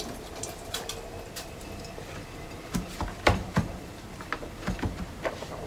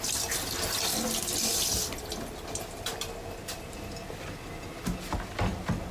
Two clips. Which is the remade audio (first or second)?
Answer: first